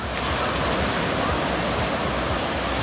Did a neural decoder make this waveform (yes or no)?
no